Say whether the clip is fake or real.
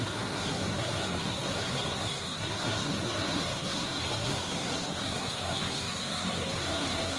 fake